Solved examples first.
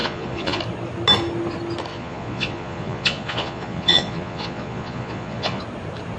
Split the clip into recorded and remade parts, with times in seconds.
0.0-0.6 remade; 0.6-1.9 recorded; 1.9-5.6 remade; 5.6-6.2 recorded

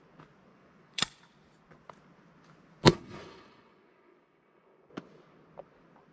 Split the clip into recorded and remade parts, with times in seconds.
0.0-0.5 recorded; 0.5-1.2 remade; 1.2-2.9 recorded; 2.9-4.9 remade; 4.9-6.1 recorded

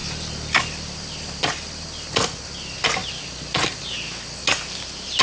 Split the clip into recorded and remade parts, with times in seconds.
0.0-3.0 recorded; 3.0-3.8 remade; 3.8-5.2 recorded

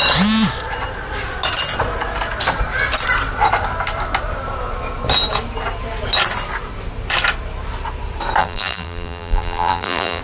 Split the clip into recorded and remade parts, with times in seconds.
0.0-8.4 recorded; 8.4-10.2 remade